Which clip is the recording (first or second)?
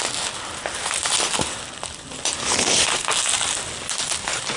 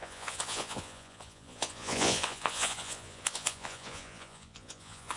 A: first